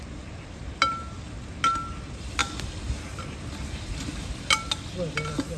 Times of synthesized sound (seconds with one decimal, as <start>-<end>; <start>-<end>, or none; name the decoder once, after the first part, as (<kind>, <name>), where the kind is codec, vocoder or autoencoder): none